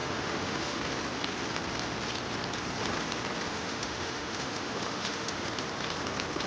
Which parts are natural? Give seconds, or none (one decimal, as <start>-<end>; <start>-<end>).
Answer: 0.8-3.5; 5.5-6.5